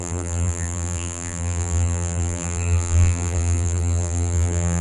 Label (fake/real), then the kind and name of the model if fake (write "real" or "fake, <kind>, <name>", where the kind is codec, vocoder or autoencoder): fake, vocoder, BigVGAN v2